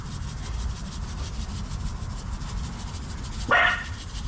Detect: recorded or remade remade